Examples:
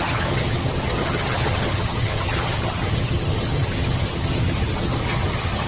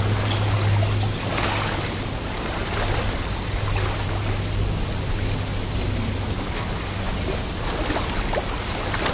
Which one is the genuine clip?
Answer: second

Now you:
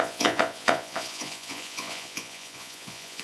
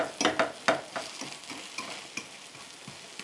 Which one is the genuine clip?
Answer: second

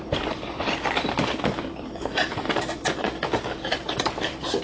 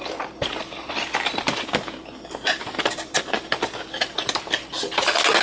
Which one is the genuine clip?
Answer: second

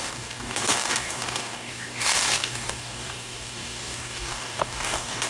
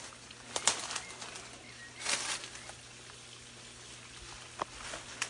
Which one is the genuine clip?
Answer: second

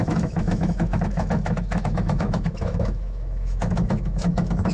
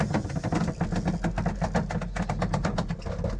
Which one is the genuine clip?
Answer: second